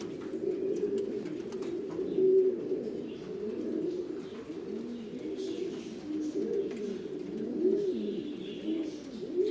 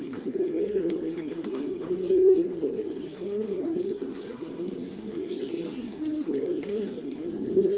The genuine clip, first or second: first